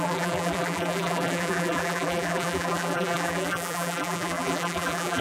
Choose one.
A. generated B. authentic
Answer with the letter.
A